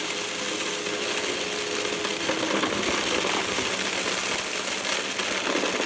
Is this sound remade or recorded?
recorded